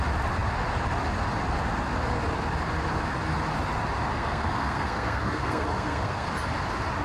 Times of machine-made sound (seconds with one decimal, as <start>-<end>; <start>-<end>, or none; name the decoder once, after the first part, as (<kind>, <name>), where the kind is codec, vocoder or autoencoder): 4.1-6.3 (codec, SNAC)